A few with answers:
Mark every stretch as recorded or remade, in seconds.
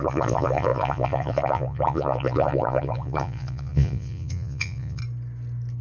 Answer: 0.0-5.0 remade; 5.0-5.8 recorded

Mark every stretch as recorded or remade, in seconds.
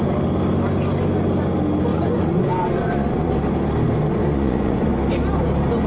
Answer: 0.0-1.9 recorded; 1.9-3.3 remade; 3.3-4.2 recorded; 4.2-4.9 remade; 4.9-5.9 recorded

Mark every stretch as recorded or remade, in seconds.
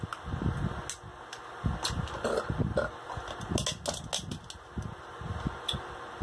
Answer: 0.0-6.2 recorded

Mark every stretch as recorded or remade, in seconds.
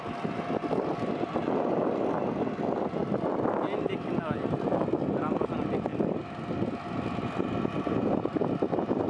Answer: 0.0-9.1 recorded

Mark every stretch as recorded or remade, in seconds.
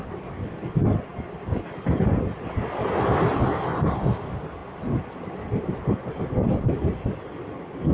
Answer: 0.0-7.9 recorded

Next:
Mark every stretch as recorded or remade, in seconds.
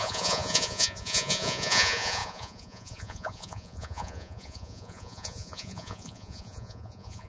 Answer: 0.0-7.3 remade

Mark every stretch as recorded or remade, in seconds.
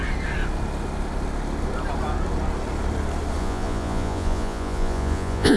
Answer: 0.0-3.4 recorded; 3.4-5.6 remade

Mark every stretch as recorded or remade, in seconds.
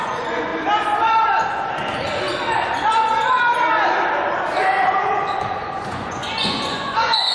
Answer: 0.0-0.5 remade; 0.5-4.9 recorded; 4.9-7.3 remade